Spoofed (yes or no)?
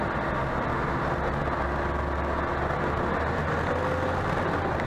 no